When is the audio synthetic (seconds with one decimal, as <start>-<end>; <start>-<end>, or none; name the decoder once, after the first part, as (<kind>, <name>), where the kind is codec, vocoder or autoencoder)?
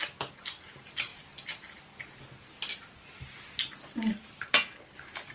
none